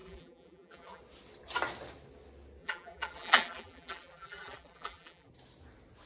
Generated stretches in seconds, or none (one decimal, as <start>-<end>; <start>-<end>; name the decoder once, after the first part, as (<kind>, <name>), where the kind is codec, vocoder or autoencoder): 0.0-1.0 (vocoder, BigVGAN v2); 2.6-5.3